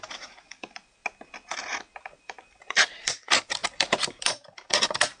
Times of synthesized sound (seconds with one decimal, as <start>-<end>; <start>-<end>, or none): 0.0-1.0; 2.0-5.2